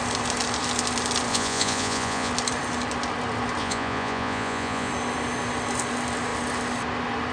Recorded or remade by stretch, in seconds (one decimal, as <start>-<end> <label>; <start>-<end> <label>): 0.0-1.3 recorded; 1.3-2.3 remade; 2.3-3.6 recorded; 3.6-4.9 remade; 4.9-7.3 recorded